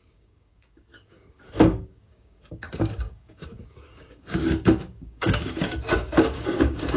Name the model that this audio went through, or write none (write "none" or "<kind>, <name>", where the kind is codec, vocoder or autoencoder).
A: codec, DAC